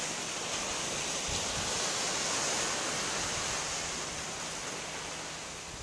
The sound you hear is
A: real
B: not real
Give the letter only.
A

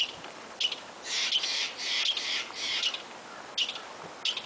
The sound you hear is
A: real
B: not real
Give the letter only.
A